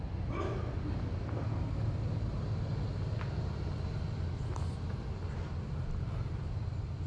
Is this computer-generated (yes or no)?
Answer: no